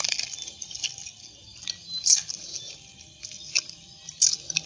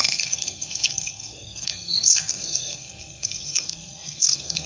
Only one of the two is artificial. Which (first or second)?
second